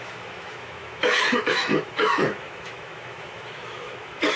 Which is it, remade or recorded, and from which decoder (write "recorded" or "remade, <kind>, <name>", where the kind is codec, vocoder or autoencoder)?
remade, autoencoder, DAC-VAE